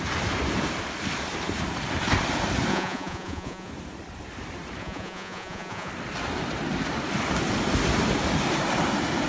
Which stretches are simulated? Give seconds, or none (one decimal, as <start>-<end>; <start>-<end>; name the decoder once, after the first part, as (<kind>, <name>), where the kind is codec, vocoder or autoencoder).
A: 2.7-3.7 (vocoder, Vocos); 4.8-5.9